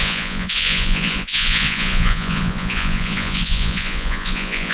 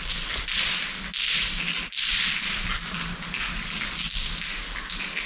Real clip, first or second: second